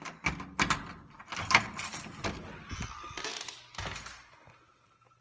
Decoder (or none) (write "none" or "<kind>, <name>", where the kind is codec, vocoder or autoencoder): none